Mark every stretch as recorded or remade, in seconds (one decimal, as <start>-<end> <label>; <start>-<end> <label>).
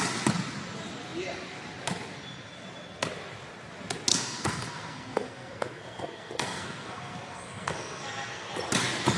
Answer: 0.0-4.1 recorded; 4.1-8.5 remade; 8.5-9.2 recorded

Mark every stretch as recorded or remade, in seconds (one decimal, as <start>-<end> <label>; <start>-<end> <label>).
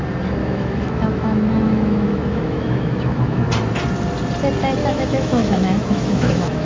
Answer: 0.0-0.4 recorded; 0.4-3.5 remade; 3.5-4.8 recorded; 4.8-6.7 remade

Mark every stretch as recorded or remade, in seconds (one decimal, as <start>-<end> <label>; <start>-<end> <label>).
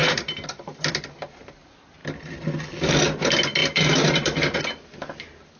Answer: 0.0-0.9 remade; 0.9-3.6 recorded; 3.6-4.6 remade; 4.6-5.6 recorded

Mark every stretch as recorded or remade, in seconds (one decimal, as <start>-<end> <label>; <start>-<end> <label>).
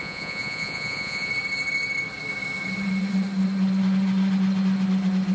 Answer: 0.0-1.3 remade; 1.3-5.3 recorded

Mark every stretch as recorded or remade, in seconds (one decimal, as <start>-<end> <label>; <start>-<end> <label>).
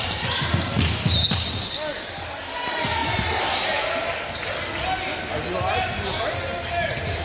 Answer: 0.0-7.2 recorded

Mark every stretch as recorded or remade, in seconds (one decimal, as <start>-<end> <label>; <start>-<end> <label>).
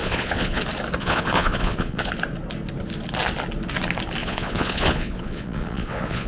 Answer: 0.0-0.6 remade; 0.6-1.0 recorded; 1.0-2.1 remade; 2.1-4.2 recorded; 4.2-6.3 remade